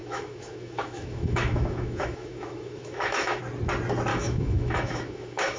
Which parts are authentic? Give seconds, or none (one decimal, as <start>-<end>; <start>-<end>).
3.4-4.1